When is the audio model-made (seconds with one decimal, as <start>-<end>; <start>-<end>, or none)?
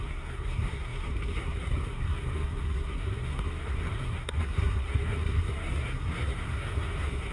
0.0-7.3